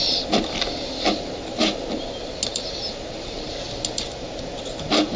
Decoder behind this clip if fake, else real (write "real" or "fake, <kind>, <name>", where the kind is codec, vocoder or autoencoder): real